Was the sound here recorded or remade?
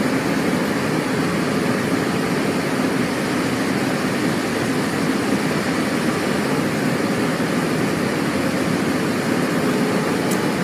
recorded